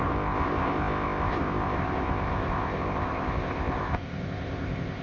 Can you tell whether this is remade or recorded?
remade